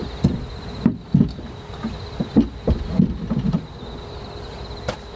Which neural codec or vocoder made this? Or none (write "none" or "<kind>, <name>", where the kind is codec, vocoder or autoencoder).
none